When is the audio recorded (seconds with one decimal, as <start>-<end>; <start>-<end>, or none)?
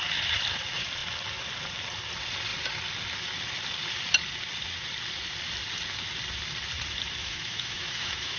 0.0-7.2